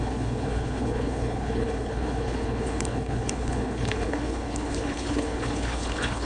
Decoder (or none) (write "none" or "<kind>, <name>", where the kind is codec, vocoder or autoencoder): codec, HILCodec